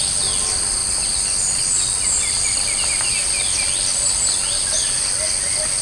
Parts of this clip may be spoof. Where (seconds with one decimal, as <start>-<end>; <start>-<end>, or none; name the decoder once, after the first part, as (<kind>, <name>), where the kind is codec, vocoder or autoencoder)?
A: none